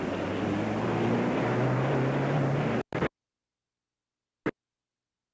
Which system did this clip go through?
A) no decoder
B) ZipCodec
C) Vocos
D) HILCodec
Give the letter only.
A